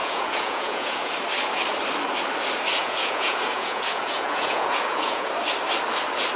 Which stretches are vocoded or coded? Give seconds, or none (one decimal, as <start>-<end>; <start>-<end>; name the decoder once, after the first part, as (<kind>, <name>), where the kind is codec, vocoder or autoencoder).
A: 0.0-1.1 (vocoder, Vocos); 2.8-5.3